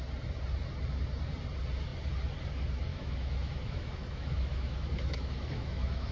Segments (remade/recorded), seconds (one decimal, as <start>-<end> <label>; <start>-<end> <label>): 0.0-2.9 recorded; 2.9-6.1 remade